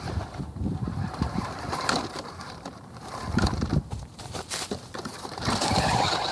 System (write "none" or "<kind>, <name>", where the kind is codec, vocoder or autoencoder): vocoder, BigVGAN v2